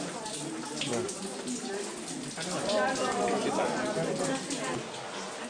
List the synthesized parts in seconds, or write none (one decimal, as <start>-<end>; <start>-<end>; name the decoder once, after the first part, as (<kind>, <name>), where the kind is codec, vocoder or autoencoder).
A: none